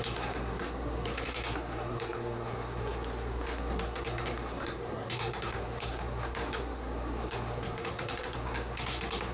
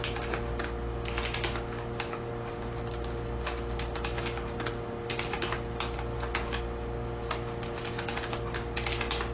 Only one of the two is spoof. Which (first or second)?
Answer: first